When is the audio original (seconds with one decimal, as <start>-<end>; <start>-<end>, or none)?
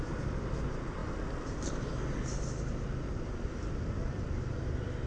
0.0-5.1